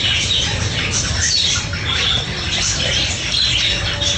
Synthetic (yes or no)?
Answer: no